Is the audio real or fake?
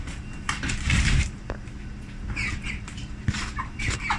fake